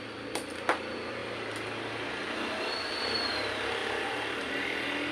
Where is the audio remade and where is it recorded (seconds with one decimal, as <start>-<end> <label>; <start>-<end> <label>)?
0.0-3.8 recorded; 3.8-4.5 remade; 4.5-5.1 recorded